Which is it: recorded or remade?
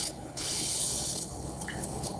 remade